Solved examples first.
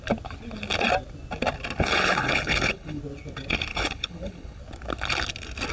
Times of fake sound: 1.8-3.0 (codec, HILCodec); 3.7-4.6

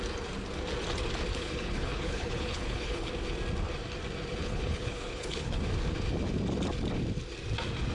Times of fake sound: 1.3-3.1 (codec, HILCodec); 4.4-5.6

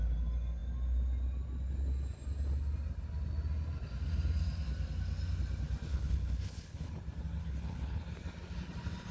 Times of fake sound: 5.9-6.9 (codec, HILCodec); 7.4-8.0

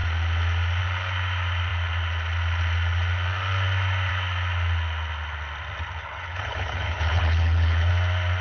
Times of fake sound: 6.0-7.9 (codec, HILCodec)

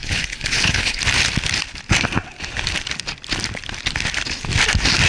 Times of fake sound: 0.0-1.0 (codec, HILCodec)